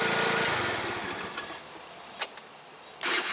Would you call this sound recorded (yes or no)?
yes